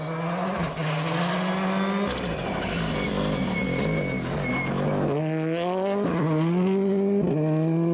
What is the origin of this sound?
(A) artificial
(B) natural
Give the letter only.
B